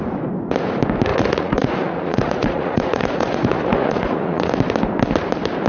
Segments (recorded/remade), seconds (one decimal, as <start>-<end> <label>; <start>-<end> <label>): 0.0-1.1 recorded; 1.1-4.5 remade; 4.5-5.7 recorded